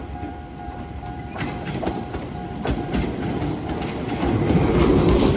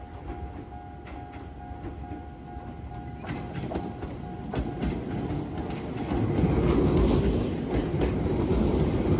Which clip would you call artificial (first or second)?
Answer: first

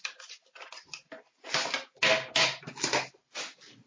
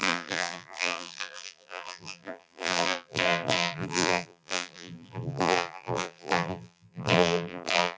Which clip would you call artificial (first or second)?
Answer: second